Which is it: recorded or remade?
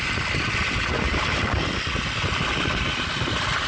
recorded